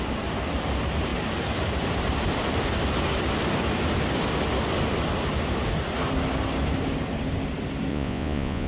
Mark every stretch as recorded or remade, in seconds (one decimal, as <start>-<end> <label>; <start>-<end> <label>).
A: 0.0-7.9 recorded; 7.9-8.7 remade